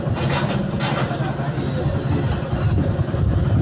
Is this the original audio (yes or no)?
yes